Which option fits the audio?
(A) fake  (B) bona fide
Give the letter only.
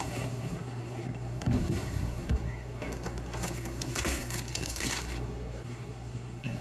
A